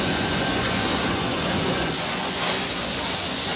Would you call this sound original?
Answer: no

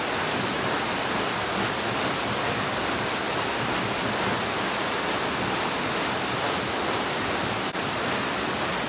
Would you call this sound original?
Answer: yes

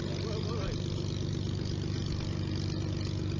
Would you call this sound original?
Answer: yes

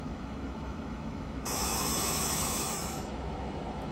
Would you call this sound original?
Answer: no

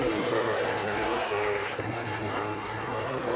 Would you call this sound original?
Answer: no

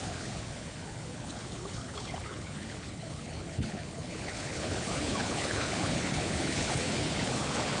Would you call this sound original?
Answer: no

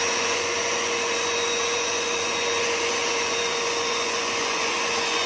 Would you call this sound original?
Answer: no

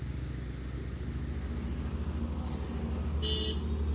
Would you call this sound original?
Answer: yes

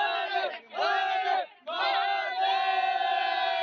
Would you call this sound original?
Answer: yes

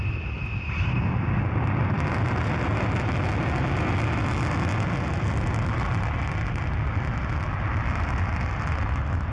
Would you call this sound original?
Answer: yes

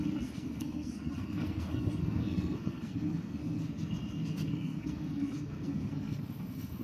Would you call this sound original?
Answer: no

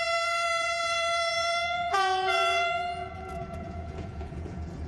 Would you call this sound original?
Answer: no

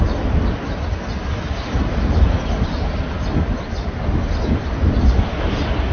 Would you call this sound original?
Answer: yes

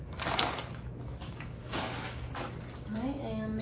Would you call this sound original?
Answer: no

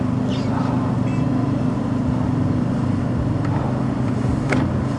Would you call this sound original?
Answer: yes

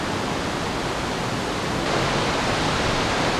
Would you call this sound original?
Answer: yes